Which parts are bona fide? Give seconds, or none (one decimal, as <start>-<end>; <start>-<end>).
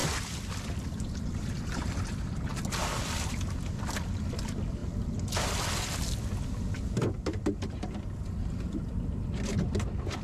1.8-10.2